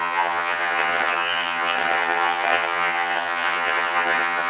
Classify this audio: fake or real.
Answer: fake